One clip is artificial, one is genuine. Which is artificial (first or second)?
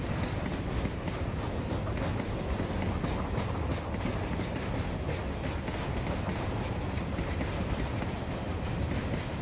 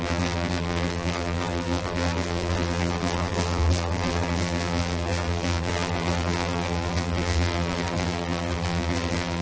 second